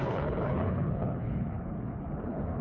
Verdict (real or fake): fake